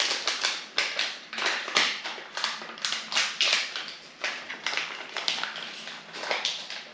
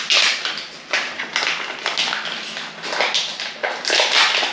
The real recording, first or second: second